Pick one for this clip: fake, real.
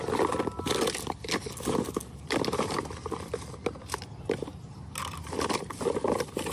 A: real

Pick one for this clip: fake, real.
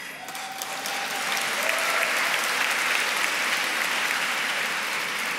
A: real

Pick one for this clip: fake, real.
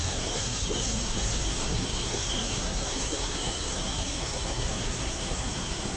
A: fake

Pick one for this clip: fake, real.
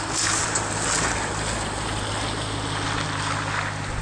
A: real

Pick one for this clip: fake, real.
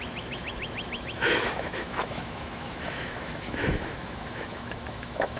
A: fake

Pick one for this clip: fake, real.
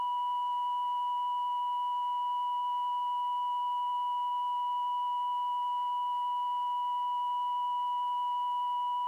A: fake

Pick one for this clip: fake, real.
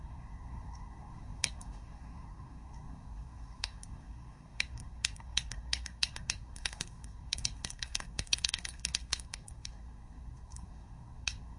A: fake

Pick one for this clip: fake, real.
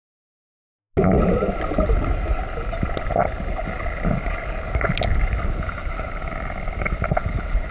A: real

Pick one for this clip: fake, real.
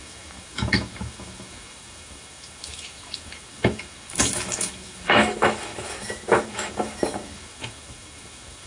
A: fake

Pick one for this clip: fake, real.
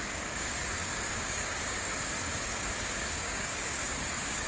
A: fake